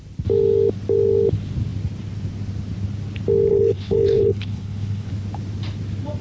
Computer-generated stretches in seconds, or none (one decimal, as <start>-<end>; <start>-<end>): 3.5-5.1